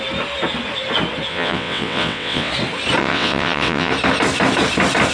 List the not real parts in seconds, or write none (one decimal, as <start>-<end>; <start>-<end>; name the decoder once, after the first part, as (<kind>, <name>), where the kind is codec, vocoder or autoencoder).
1.3-2.5 (vocoder, WaveNeXt); 3.0-3.9